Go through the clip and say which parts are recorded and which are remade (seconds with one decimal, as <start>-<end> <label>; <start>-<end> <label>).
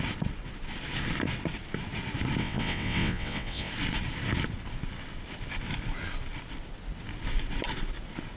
0.0-2.4 recorded; 2.4-3.7 remade; 3.7-8.4 recorded